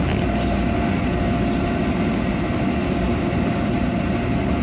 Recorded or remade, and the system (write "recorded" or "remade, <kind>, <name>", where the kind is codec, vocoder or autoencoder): recorded